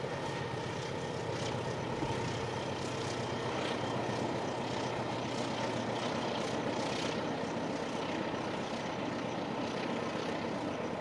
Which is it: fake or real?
real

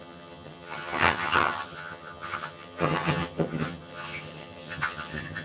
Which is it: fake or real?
fake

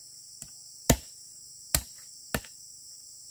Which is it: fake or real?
real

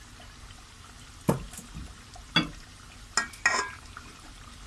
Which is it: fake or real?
real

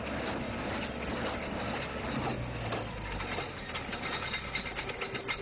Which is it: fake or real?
real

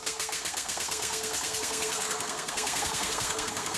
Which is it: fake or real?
fake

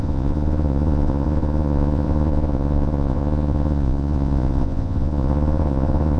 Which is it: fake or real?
fake